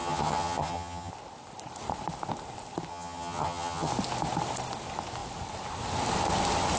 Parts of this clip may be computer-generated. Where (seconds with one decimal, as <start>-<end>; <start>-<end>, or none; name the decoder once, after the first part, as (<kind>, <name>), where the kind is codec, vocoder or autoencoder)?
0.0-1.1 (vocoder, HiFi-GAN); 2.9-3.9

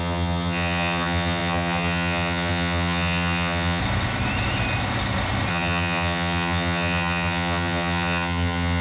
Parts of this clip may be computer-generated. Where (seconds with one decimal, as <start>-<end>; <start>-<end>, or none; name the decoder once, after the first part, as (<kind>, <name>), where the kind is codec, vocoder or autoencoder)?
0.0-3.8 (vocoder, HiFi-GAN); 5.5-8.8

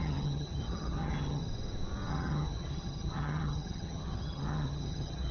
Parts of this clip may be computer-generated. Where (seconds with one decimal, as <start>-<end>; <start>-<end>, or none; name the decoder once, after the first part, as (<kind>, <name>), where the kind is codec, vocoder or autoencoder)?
0.0-1.4 (vocoder, HiFi-GAN); 2.1-5.3

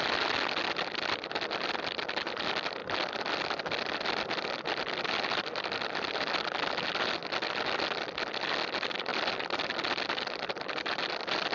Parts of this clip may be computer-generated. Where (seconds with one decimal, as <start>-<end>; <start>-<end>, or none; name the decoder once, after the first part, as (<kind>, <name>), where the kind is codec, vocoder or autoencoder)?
none

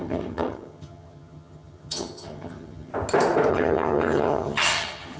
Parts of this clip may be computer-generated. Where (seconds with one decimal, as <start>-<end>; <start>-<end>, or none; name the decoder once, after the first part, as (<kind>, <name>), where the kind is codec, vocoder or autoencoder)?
0.0-2.9 (vocoder, HiFi-GAN); 3.5-5.2